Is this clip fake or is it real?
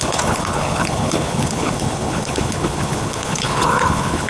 fake